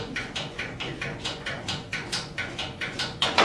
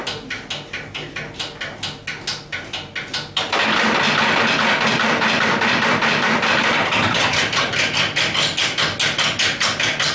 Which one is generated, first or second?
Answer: first